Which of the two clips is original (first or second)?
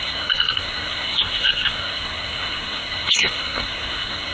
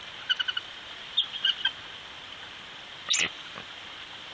second